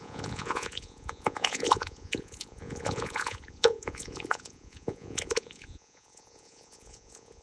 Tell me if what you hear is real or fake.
fake